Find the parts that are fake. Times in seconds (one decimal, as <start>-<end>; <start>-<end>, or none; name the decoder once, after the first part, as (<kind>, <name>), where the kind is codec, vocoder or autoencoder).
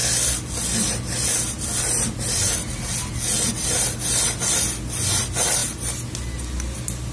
none